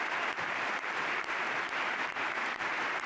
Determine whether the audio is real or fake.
fake